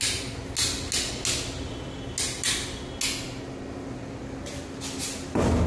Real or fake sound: real